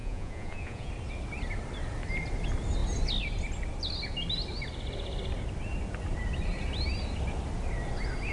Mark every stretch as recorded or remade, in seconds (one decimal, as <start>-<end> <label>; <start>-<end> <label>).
0.0-0.9 remade; 0.9-8.3 recorded